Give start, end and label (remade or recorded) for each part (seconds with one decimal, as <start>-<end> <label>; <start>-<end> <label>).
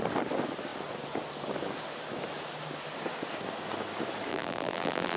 0.0-4.3 recorded; 4.3-5.2 remade